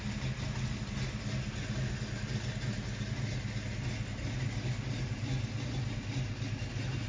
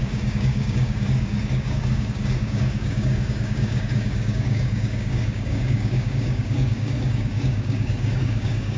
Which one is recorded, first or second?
first